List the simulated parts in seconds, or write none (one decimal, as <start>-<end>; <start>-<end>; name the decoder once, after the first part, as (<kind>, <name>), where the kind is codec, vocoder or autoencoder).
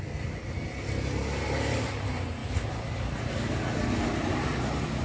none